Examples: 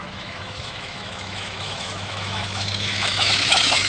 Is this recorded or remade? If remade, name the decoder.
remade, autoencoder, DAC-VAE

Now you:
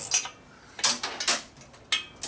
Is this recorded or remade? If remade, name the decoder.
recorded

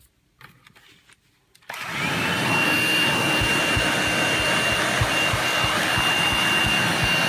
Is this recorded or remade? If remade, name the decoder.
recorded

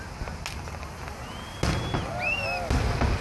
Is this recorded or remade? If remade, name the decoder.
recorded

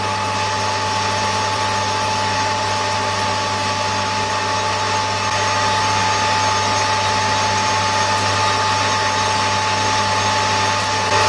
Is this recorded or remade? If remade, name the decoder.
recorded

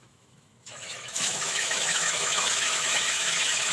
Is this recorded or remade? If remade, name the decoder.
remade, autoencoder, DAC-VAE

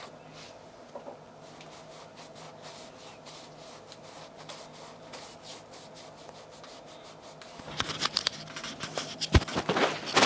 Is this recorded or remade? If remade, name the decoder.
recorded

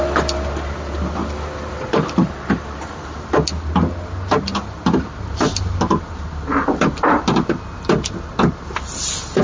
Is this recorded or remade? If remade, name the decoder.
recorded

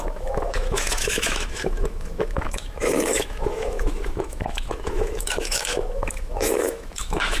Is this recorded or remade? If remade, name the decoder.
remade, autoencoder, DAC-VAE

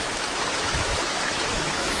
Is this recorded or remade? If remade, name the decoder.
remade, autoencoder, DAC-VAE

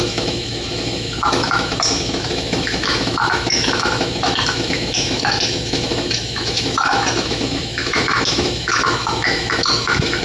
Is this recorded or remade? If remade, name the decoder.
remade, autoencoder, DAC-VAE